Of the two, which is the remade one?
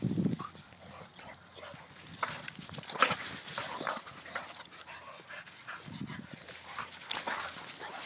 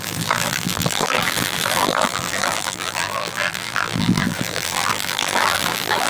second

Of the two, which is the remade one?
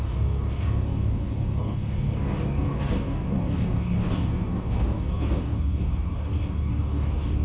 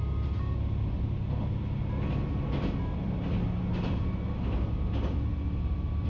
first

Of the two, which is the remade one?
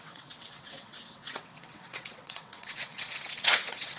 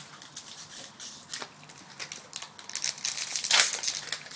first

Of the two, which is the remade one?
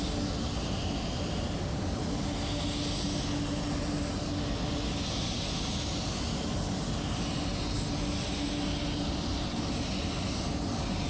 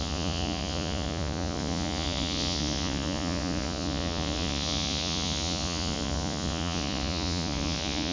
second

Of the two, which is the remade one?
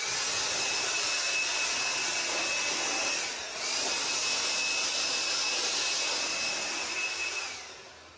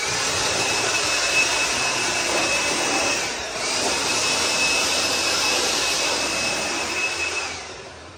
second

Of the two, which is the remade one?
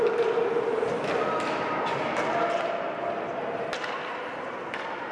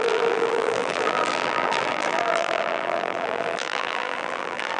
second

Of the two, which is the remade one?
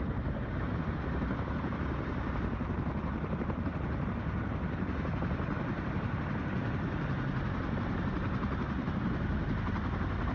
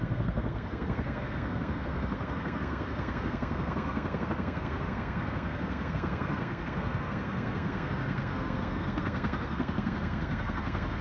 second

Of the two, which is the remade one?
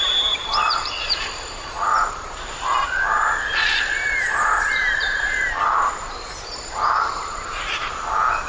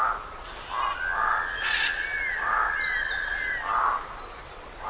first